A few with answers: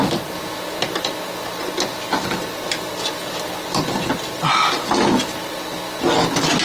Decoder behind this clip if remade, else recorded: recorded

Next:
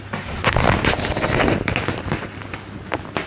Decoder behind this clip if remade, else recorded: remade, vocoder, BigVGAN v2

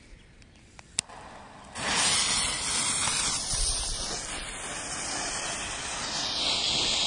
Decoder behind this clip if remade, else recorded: recorded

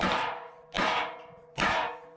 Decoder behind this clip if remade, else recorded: remade, vocoder, BigVGAN v2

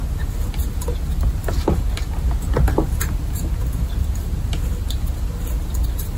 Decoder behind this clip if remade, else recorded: recorded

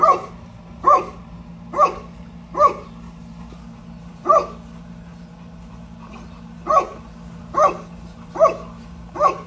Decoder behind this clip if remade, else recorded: recorded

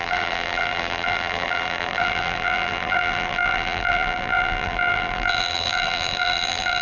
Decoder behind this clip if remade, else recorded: remade, vocoder, BigVGAN v2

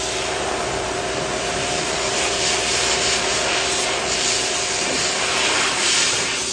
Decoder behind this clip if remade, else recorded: remade, vocoder, BigVGAN v2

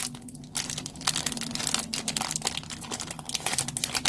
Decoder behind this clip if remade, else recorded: recorded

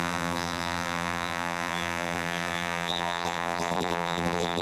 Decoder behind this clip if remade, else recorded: remade, vocoder, BigVGAN v2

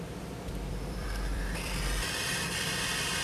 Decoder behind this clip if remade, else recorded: remade, vocoder, BigVGAN v2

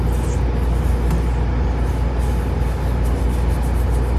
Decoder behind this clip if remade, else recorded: recorded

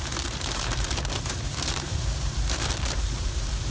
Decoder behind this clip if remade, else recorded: remade, vocoder, BigVGAN v2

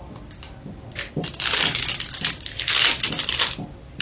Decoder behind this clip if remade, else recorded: recorded